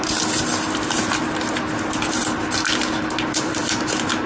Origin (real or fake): real